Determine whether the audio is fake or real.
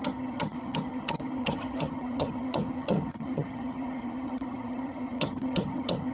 fake